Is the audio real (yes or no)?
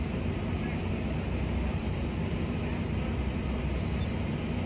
yes